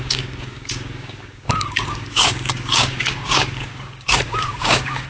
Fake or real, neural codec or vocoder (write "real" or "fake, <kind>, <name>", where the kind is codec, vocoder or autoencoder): fake, codec, DAC